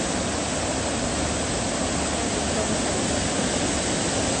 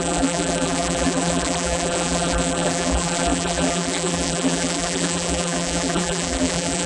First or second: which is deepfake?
second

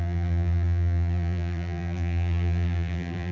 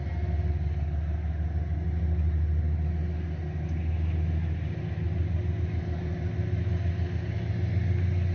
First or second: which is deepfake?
first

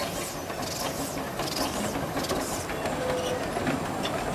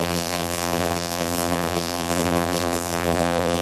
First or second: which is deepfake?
second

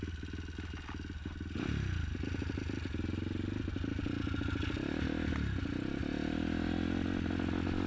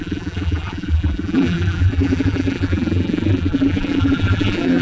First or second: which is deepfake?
second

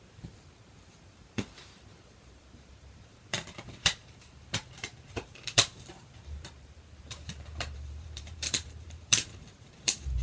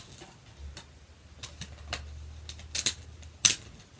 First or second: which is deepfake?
first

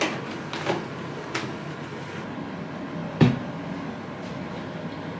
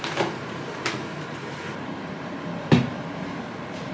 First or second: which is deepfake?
second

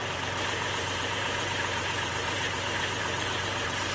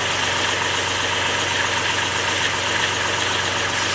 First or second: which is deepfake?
first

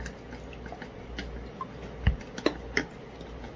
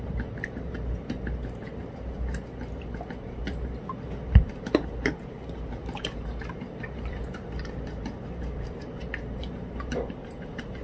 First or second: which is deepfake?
second